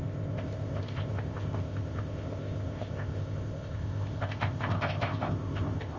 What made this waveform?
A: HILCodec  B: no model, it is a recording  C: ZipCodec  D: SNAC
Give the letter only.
C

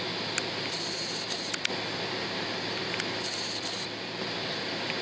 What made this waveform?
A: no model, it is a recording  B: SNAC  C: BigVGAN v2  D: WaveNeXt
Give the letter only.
A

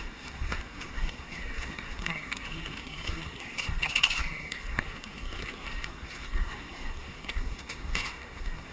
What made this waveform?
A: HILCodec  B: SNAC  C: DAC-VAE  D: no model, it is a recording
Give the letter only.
B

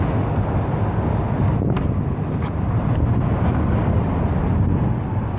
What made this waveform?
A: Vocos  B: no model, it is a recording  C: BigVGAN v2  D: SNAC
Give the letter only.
B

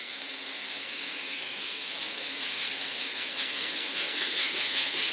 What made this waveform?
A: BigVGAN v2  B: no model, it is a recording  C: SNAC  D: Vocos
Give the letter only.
C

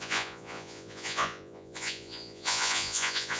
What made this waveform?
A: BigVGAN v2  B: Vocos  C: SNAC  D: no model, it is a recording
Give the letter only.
B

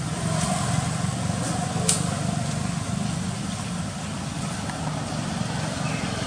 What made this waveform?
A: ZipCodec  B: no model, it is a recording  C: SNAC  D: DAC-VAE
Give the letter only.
B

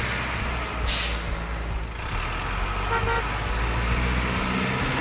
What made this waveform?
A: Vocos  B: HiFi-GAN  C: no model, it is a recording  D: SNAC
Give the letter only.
C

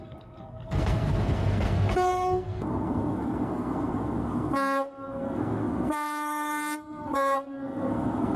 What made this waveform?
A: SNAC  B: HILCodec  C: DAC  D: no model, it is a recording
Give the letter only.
A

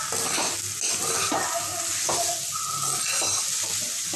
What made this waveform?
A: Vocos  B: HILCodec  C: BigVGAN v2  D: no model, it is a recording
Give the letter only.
D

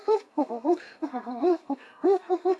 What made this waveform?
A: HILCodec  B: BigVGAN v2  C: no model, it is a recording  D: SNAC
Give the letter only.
D